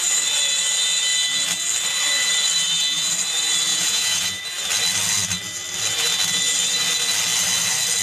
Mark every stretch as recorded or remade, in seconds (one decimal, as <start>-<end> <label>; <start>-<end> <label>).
0.0-3.7 recorded; 3.7-4.4 remade; 4.4-8.0 recorded